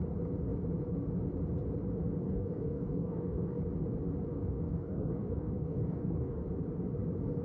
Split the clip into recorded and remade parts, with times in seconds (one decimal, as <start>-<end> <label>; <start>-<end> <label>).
0.0-2.2 recorded; 2.2-3.6 remade; 3.6-4.3 recorded; 4.3-6.5 remade; 6.5-7.4 recorded